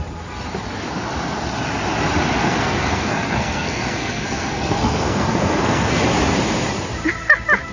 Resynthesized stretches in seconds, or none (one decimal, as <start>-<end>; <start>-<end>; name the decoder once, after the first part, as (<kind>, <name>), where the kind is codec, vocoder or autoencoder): 2.4-6.0 (codec, SNAC)